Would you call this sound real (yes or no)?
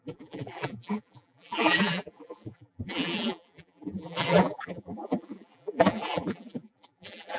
no